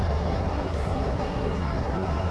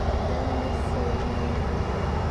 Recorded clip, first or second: second